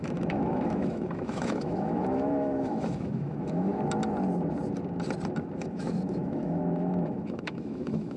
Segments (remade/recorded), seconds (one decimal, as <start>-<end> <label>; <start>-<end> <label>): 0.0-3.7 remade; 3.7-5.6 recorded; 5.6-8.2 remade